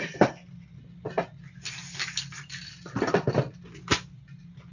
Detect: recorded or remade recorded